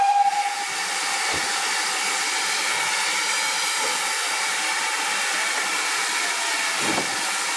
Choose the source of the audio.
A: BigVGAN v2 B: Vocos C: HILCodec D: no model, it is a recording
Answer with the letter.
D